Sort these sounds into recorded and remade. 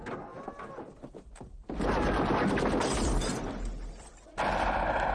recorded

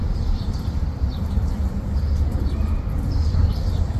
remade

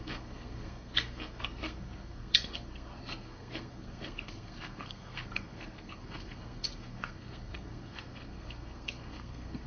remade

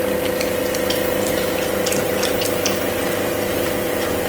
remade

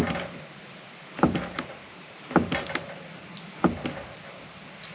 recorded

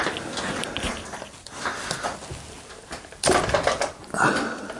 recorded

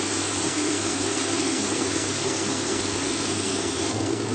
remade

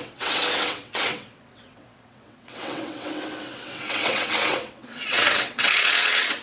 remade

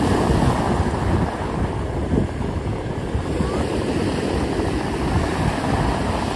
recorded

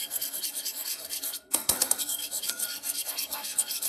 remade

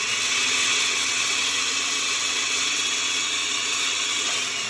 remade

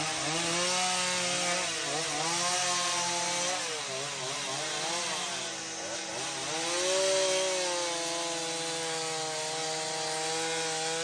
recorded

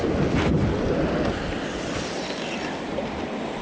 recorded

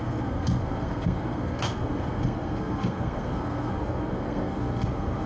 remade